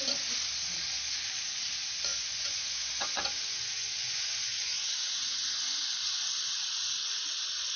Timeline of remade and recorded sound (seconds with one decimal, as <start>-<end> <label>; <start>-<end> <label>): 0.0-2.1 recorded; 2.1-6.2 remade; 6.2-7.8 recorded